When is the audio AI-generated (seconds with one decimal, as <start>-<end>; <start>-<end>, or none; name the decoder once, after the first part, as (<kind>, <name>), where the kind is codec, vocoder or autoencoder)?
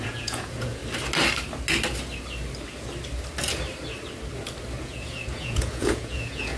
0.0-0.8 (vocoder, Vocos); 4.8-6.6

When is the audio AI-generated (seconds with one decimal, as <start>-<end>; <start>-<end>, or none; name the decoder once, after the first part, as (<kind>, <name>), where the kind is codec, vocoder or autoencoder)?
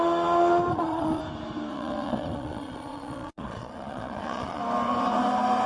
0.7-1.2 (vocoder, Vocos); 1.7-4.6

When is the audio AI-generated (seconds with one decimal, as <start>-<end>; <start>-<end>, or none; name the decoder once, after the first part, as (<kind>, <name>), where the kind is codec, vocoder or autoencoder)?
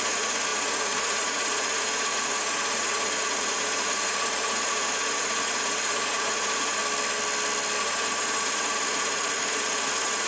0.0-6.8 (vocoder, Vocos); 7.8-10.3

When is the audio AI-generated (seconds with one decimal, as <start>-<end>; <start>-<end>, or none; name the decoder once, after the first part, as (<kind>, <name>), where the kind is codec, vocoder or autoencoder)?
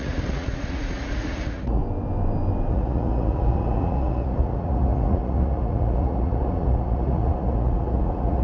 0.0-1.8 (vocoder, Vocos); 2.7-8.4